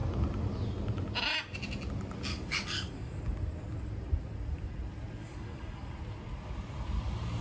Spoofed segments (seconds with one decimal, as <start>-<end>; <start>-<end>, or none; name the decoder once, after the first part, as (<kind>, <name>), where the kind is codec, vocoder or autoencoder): 2.3-3.2 (codec, DAC); 5.2-5.9